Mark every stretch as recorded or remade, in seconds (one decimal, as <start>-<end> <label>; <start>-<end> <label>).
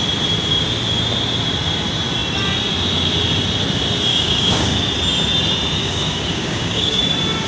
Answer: 0.0-4.1 recorded; 4.1-4.9 remade; 4.9-5.8 recorded; 5.8-7.0 remade; 7.0-7.5 recorded